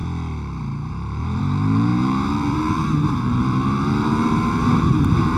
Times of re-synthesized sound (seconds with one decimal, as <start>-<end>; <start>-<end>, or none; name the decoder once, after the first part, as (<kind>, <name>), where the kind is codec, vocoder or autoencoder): 0.9-5.4 (vocoder, BigVGAN v2)